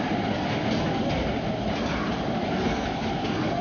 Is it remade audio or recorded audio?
recorded